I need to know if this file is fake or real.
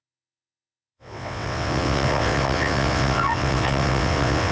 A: fake